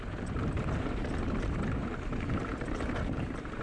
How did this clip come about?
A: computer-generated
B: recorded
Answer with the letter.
A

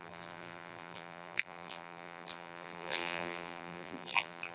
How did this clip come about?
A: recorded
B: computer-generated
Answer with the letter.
B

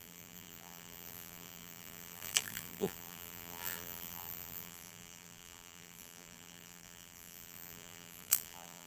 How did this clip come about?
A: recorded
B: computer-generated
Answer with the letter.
B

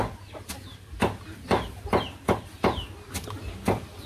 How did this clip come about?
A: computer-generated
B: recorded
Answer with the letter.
B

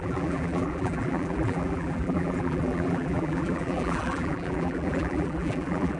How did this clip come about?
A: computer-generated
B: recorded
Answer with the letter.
A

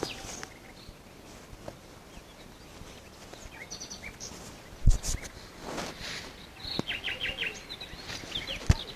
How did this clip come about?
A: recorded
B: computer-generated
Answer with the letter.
A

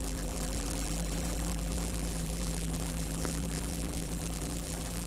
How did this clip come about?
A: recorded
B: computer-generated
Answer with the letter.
B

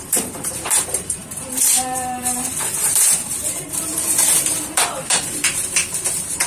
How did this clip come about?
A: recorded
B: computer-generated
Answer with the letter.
B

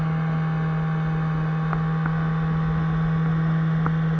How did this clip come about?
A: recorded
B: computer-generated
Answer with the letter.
A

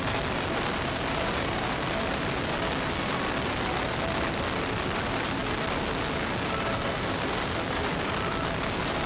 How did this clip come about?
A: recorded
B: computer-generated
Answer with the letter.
B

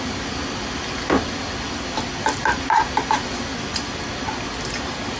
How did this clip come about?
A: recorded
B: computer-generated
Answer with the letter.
A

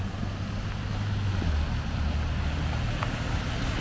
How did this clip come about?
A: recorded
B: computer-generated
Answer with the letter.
A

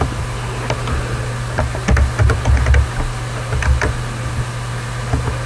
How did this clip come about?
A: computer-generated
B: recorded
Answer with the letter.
B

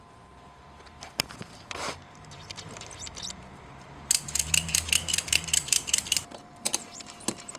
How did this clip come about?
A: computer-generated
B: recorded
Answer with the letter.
A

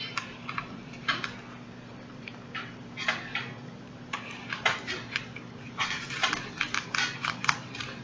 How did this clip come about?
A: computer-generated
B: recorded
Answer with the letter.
A